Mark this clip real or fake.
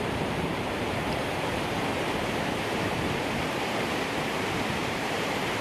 fake